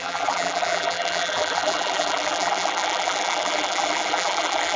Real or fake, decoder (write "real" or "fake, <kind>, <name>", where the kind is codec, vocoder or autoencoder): fake, vocoder, BigVGAN v2